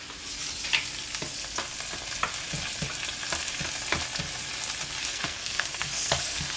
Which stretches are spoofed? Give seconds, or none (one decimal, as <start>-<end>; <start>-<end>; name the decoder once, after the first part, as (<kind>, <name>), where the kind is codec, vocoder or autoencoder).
5.0-6.6 (codec, SNAC)

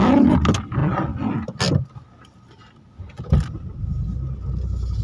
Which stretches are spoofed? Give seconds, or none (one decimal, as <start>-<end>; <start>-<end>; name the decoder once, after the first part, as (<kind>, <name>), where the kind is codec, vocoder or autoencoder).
none

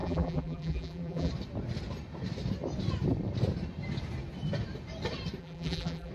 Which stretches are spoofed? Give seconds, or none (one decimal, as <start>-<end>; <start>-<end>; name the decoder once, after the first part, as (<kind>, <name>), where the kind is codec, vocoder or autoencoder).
0.0-1.3 (vocoder, BigVGAN v2); 5.4-6.1

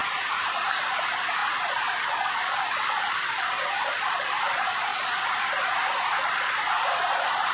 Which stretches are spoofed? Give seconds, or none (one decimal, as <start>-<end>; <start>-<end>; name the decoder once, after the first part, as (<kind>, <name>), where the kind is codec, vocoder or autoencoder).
none

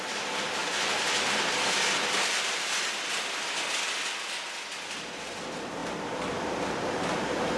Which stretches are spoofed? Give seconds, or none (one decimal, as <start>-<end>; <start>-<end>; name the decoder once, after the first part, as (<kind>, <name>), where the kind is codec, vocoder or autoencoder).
none

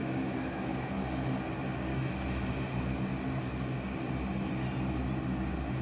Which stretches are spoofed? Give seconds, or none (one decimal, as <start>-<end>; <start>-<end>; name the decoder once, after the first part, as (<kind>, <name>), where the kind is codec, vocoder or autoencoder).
0.0-0.7 (autoencoder, DAC-VAE); 1.9-2.5